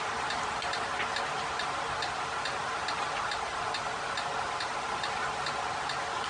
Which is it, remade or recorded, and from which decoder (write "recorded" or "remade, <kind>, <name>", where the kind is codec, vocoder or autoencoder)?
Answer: recorded